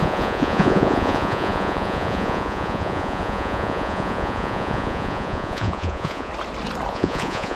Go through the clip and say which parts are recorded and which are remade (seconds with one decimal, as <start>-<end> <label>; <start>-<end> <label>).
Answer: 0.0-6.3 remade; 6.3-6.9 recorded; 6.9-7.6 remade